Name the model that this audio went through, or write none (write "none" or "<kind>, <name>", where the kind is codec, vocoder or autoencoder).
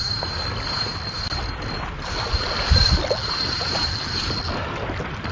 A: none